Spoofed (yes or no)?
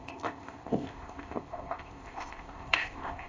yes